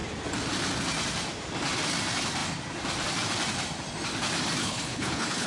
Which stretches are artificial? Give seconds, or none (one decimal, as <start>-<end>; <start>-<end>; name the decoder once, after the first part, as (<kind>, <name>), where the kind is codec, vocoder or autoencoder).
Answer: 4.6-5.5 (codec, HILCodec)